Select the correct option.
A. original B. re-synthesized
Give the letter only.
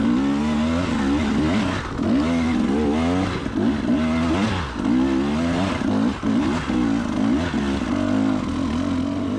A